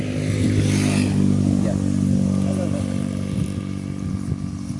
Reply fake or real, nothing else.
real